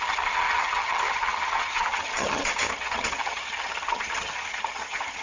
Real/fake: fake